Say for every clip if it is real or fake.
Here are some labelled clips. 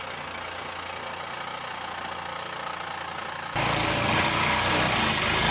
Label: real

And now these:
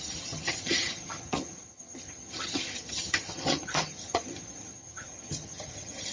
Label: fake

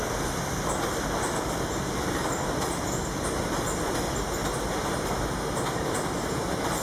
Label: real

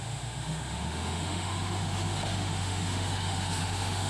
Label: fake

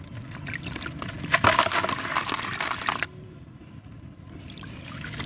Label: real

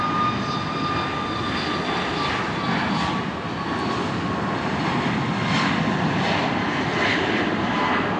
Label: real